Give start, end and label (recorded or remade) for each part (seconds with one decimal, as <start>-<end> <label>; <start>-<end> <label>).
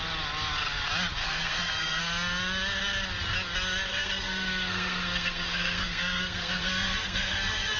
0.0-1.2 recorded; 1.2-2.0 remade; 2.0-3.9 recorded; 3.9-7.8 remade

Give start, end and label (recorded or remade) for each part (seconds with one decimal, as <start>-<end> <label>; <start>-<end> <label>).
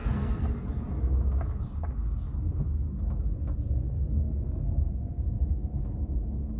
0.0-0.5 remade; 0.5-3.8 recorded; 3.8-4.9 remade; 4.9-6.6 recorded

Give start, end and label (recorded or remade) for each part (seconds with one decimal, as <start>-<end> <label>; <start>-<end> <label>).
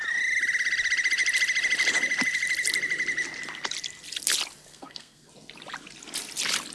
0.0-4.7 recorded; 4.7-5.3 remade; 5.3-6.7 recorded